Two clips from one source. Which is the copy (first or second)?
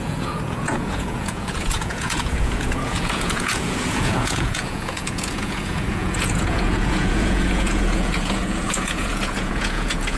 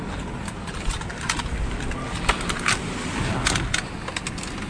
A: first